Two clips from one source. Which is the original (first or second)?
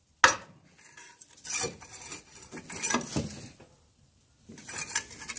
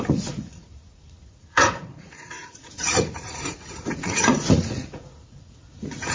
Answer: first